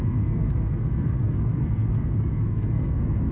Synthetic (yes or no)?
yes